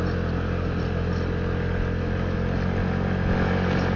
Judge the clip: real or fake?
real